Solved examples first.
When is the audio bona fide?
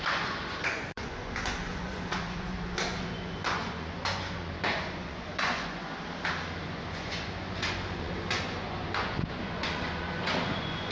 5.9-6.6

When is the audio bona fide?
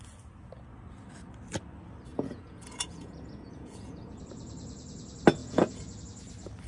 0.0-2.1; 4.2-5.4; 6.0-6.7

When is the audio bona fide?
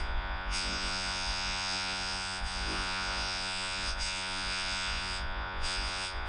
none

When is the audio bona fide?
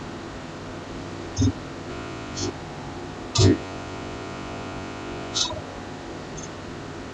0.0-1.9; 2.5-3.4; 5.4-7.1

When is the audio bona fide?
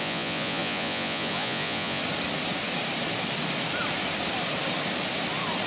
2.0-5.7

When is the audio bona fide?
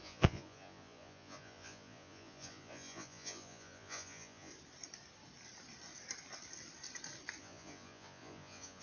4.5-7.4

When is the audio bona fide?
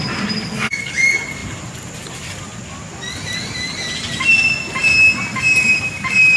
0.0-6.4